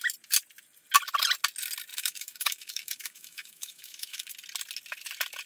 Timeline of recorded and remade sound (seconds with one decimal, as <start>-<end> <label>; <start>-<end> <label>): 0.0-1.9 recorded; 1.9-4.3 remade; 4.3-5.5 recorded